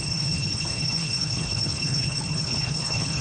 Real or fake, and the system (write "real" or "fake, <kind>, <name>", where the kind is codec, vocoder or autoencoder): fake, codec, HILCodec